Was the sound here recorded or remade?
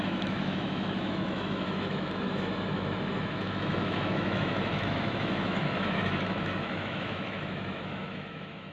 remade